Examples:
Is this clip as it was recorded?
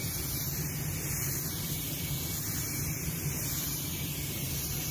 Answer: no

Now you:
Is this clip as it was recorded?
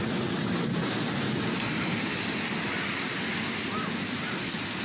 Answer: yes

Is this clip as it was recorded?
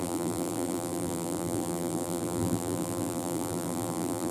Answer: no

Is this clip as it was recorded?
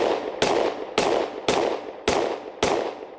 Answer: yes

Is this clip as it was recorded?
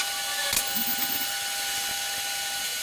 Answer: yes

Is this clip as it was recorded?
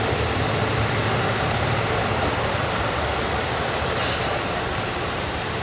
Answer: no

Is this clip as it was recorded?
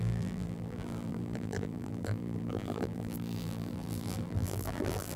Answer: no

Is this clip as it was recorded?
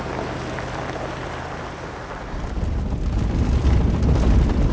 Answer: yes